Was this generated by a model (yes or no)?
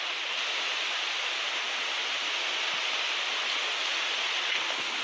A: no